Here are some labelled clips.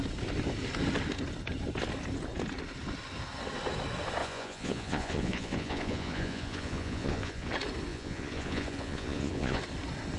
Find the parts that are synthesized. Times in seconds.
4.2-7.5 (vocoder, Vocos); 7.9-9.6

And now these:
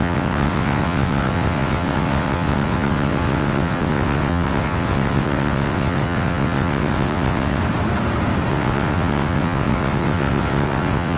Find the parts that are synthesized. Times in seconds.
0.0-7.6 (vocoder, WaveNeXt); 8.5-11.2

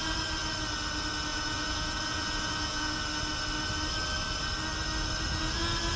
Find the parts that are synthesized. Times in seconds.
1.3-3.0 (vocoder, Vocos)

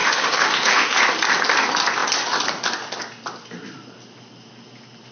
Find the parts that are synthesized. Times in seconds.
0.0-1.0 (autoencoder, DAC-VAE)

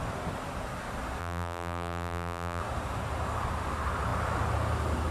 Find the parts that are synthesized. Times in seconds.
1.2-2.6 (vocoder, BigVGAN v2)

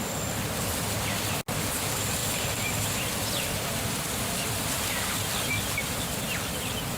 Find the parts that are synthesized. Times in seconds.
2.2-4.7 (vocoder, BigVGAN v2)

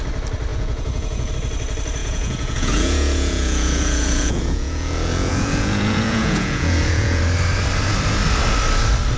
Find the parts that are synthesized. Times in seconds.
0.5-1.3 (vocoder, Vocos); 2.0-7.2

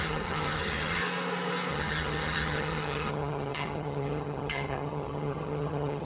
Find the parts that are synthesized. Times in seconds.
0.0-1.0 (vocoder, HiFi-GAN); 1.7-6.0